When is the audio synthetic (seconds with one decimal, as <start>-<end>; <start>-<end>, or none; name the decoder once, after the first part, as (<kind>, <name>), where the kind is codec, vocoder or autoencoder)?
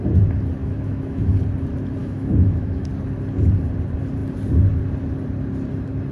0.6-1.4 (autoencoder, DAC-VAE); 2.0-2.8